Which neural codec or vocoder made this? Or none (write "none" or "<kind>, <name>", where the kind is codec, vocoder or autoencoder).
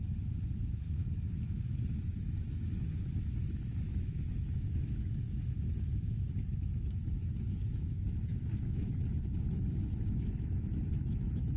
autoencoder, DAC-VAE